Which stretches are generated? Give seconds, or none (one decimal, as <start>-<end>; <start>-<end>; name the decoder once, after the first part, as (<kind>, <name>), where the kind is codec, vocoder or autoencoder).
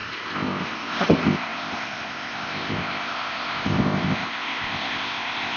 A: 0.0-5.6 (codec, ZipCodec)